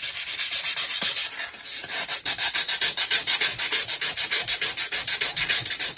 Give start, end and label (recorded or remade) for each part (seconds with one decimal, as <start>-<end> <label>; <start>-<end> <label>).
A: 0.0-1.8 recorded; 1.8-2.7 remade; 2.7-3.5 recorded; 3.5-5.3 remade; 5.3-6.0 recorded